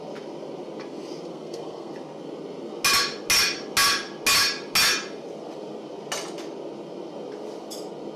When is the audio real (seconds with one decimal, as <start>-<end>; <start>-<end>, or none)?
0.0-1.3; 1.9-8.2